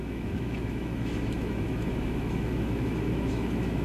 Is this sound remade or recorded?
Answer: remade